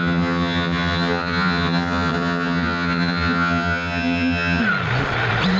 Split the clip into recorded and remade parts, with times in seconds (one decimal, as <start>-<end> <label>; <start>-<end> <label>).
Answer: 0.0-4.6 remade; 4.6-5.6 recorded